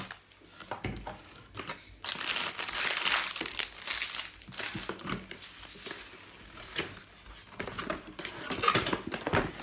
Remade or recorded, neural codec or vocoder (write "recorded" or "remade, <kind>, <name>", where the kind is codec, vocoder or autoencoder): recorded